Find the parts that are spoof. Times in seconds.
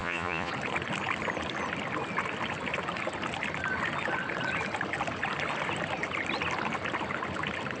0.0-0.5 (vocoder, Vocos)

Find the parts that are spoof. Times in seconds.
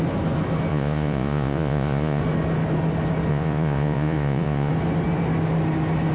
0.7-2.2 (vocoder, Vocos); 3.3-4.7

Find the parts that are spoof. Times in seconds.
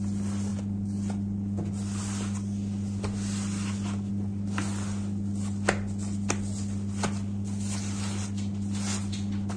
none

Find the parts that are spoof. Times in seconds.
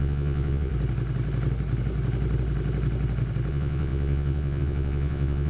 0.0-0.7 (vocoder, Vocos); 3.5-5.5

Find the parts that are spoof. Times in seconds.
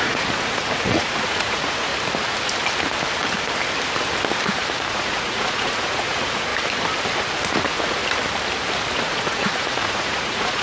0.0-1.9 (vocoder, Vocos); 4.9-6.5; 7.5-8.0; 8.9-10.6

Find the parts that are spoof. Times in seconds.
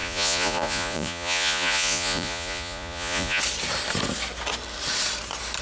0.0-3.4 (vocoder, Vocos)